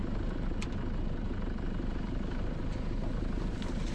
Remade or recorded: remade